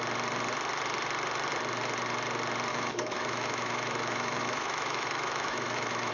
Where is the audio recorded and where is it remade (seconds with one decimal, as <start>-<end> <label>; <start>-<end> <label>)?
0.0-2.7 recorded; 2.7-6.1 remade